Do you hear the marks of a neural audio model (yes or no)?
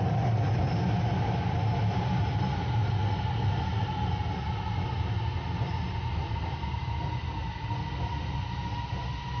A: no